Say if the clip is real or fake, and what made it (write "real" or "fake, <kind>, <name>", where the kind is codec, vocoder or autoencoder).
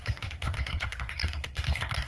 fake, codec, SNAC